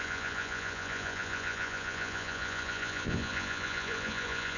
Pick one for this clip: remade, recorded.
remade